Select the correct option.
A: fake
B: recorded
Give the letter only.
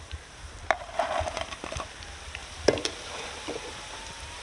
A